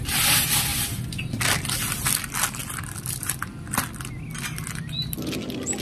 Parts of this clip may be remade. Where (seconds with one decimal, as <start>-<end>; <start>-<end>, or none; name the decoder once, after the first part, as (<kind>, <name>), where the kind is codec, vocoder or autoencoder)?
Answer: none